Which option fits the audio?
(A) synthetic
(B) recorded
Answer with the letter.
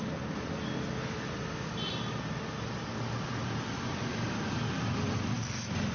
B